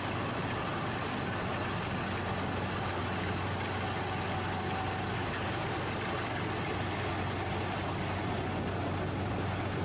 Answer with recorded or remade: recorded